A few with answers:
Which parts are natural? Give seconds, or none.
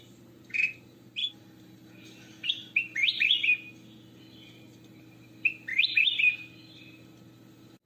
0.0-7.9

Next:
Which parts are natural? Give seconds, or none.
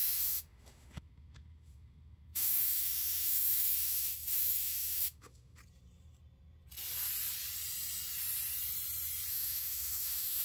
5.6-9.3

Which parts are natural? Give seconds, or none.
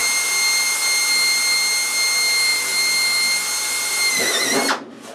0.0-5.1